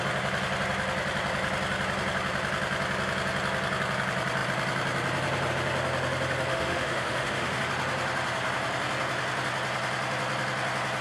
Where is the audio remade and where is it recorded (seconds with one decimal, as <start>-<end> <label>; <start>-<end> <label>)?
0.0-6.5 recorded; 6.5-7.6 remade; 7.6-11.0 recorded